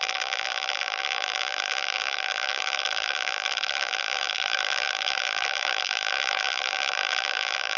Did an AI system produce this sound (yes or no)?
yes